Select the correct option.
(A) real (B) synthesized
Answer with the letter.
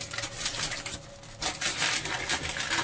A